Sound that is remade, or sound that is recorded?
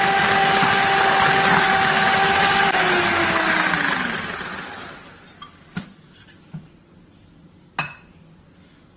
recorded